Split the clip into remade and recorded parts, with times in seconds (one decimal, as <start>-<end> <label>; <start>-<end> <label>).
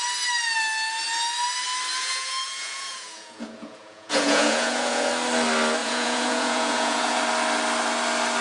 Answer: 0.0-2.0 recorded; 2.0-5.1 remade; 5.1-5.8 recorded; 5.8-7.2 remade; 7.2-8.4 recorded